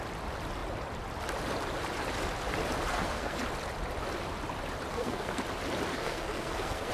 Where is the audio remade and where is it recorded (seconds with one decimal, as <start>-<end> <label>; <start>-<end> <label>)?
0.0-2.9 recorded; 2.9-3.4 remade; 3.4-4.9 recorded; 4.9-5.4 remade; 5.4-5.9 recorded; 5.9-6.9 remade